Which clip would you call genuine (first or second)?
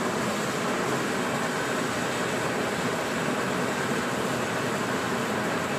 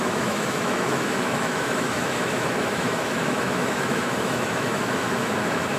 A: first